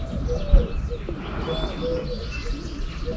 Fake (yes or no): no